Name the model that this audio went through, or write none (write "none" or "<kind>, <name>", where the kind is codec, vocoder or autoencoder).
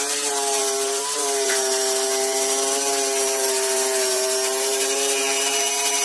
vocoder, BigVGAN v2